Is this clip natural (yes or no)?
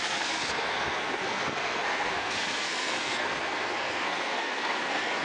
no